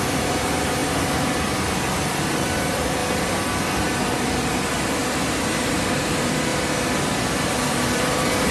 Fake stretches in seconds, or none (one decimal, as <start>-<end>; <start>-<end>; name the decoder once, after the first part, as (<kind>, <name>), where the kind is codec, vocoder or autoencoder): 0.0-3.0 (vocoder, BigVGAN v2); 3.8-6.5; 7.7-8.5